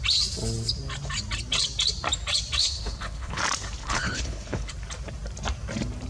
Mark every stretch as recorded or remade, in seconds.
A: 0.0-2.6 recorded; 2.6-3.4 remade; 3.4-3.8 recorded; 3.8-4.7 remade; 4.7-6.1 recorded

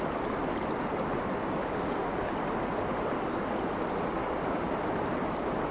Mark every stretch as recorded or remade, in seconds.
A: 0.0-1.4 recorded; 1.4-2.3 remade; 2.3-4.2 recorded; 4.2-4.7 remade; 4.7-5.7 recorded

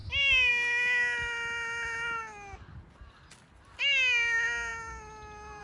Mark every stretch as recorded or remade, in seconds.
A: 0.0-5.6 recorded

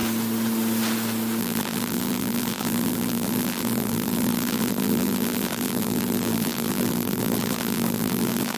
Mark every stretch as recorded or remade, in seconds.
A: 0.0-1.4 recorded; 1.4-8.6 remade

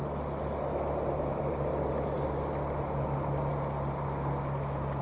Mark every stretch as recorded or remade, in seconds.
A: 0.0-5.0 recorded